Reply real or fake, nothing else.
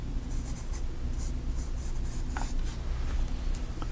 real